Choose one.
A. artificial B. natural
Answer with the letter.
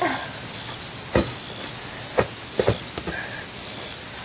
B